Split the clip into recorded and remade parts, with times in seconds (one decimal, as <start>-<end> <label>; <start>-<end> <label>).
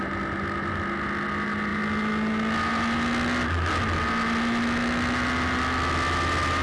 0.0-6.6 recorded